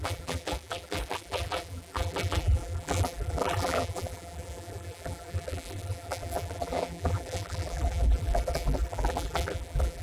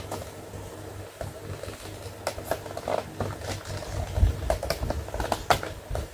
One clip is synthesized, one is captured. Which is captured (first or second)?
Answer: second